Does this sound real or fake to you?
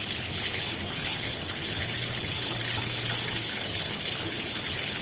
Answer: fake